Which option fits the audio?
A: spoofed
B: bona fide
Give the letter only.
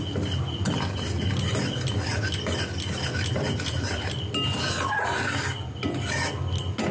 B